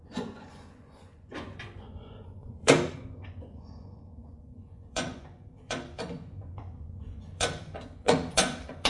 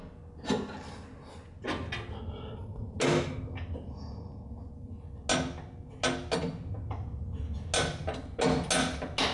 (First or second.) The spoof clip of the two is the first